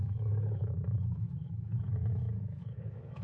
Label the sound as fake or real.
fake